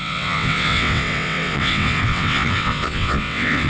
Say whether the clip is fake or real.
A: fake